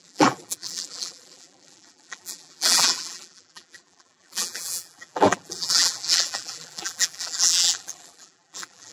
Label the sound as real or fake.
fake